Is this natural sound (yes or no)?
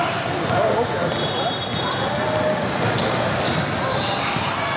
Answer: yes